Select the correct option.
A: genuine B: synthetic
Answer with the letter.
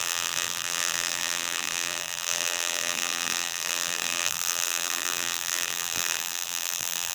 B